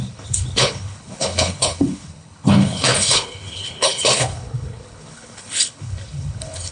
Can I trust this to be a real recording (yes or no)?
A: no